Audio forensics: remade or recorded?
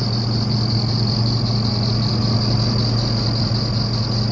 recorded